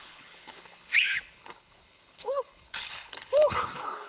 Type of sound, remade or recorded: remade